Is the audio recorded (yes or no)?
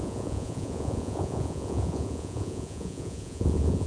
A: no